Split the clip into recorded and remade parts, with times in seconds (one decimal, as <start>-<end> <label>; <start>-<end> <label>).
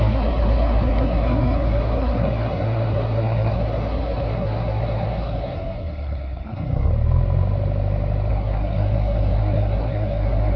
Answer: 0.0-6.9 remade; 6.9-8.3 recorded; 8.3-10.6 remade